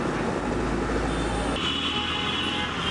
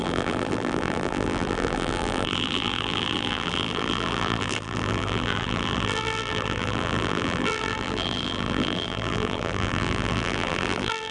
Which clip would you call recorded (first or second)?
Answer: first